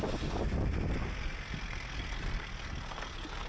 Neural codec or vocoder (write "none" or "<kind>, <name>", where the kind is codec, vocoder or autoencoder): none